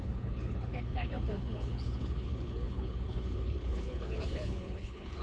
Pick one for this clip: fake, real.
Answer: fake